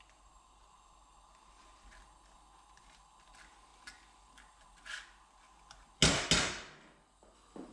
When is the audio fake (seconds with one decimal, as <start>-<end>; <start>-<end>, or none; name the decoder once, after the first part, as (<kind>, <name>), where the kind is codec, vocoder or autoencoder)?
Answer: none